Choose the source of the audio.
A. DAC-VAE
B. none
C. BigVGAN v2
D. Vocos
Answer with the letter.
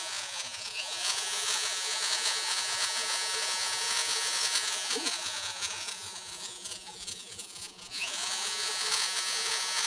D